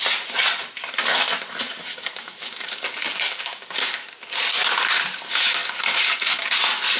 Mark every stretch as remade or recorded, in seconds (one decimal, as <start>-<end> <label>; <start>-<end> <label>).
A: 0.0-1.9 recorded; 1.9-4.4 remade; 4.4-5.6 recorded; 5.6-6.5 remade; 6.5-7.0 recorded